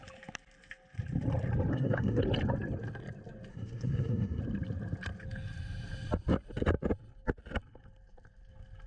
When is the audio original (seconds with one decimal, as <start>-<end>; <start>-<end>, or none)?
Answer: 0.0-1.7; 2.2-3.5; 4.4-8.9